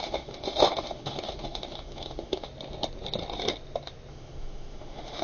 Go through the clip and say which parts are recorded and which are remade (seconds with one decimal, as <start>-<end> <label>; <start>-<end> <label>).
0.0-2.5 remade; 2.5-4.1 recorded; 4.1-5.2 remade